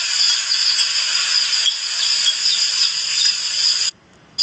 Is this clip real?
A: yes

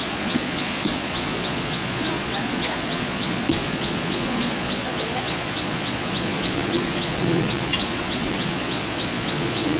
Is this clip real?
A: no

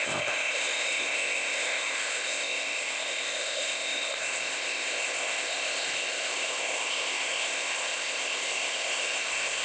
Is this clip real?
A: no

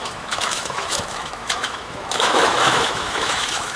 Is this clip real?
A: no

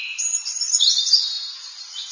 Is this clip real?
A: yes